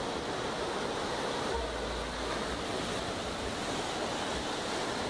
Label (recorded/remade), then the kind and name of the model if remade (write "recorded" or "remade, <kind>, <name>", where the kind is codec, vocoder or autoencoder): recorded